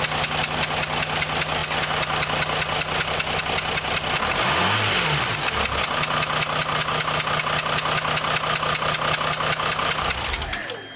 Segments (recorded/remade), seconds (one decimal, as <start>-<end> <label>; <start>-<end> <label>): 0.0-11.0 recorded